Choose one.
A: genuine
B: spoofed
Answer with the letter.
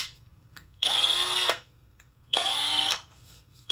B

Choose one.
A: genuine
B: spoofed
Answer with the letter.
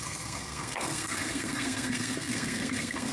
B